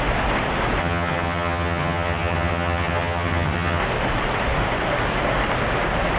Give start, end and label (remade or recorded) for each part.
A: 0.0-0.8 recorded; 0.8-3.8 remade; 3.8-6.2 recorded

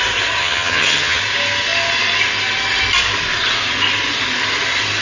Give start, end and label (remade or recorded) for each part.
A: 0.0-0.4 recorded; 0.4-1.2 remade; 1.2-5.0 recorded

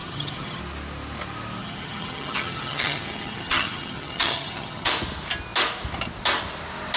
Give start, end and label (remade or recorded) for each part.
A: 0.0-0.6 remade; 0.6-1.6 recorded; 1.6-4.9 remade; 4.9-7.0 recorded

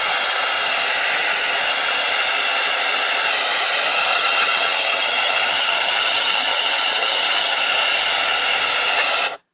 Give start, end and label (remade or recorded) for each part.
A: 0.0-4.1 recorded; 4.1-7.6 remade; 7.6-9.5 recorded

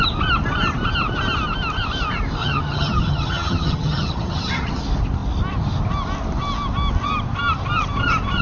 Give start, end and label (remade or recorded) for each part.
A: 0.0-2.4 recorded; 2.4-4.8 remade; 4.8-8.4 recorded

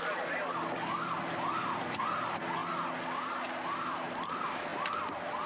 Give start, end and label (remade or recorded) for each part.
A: 0.0-5.5 recorded

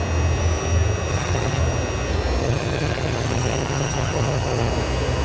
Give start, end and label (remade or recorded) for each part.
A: 0.0-1.1 recorded; 1.1-1.6 remade; 1.6-2.4 recorded; 2.4-4.7 remade; 4.7-5.2 recorded

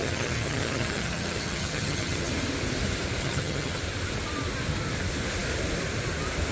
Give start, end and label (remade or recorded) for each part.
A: 0.0-2.3 remade; 2.3-3.2 recorded; 3.2-3.8 remade; 3.8-6.5 recorded